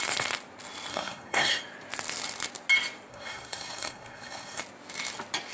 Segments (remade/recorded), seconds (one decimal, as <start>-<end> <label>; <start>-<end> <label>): 0.0-0.9 recorded; 0.9-1.6 remade; 1.6-3.1 recorded; 3.1-4.6 remade; 4.6-5.5 recorded